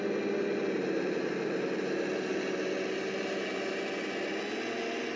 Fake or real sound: real